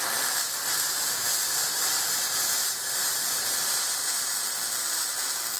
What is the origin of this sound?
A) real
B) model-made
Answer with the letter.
B